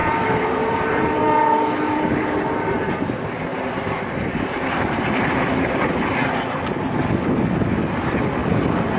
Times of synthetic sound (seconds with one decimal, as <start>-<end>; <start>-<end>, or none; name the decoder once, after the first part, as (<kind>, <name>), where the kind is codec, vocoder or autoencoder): 0.0-2.9 (vocoder, BigVGAN v2)